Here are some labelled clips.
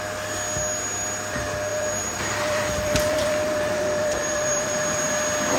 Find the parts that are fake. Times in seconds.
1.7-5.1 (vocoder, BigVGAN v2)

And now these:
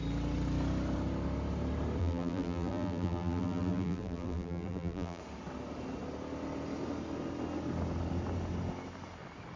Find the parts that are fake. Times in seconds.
2.0-5.2 (vocoder, BigVGAN v2)

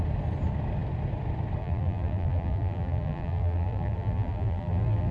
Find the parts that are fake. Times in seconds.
1.6-5.1 (vocoder, BigVGAN v2)

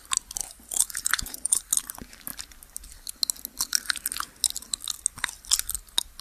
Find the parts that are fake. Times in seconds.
0.4-1.6 (vocoder, BigVGAN v2)

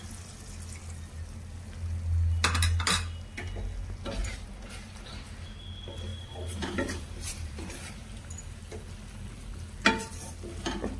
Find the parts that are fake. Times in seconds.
4.2-5.1 (vocoder, BigVGAN v2); 6.1-8.8

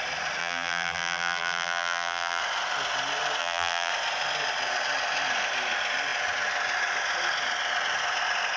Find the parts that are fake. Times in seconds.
0.4-2.4 (vocoder, BigVGAN v2); 3.4-3.9

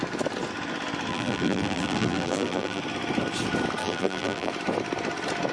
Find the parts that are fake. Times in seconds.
1.1-2.8 (vocoder, BigVGAN v2); 3.8-4.5